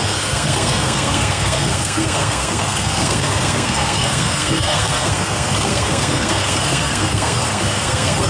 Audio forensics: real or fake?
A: fake